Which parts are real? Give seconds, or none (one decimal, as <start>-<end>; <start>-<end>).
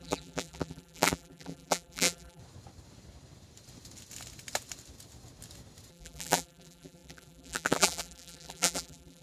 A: 2.4-5.9